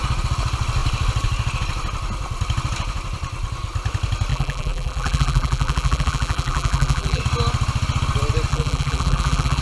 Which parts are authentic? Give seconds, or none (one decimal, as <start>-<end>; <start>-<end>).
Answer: 0.0-4.3; 7.2-8.5